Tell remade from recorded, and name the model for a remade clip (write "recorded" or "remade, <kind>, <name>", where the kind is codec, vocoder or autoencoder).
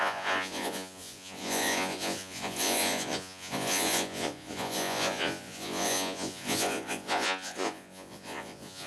remade, vocoder, Vocos